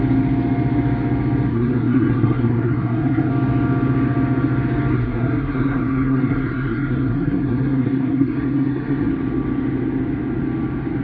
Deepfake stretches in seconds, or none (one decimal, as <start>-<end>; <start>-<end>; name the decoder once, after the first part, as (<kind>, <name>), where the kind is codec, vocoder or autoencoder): 1.5-3.3 (codec, SNAC); 4.9-9.1